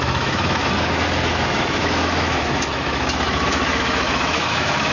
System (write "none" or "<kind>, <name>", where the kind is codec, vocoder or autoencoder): autoencoder, DAC-VAE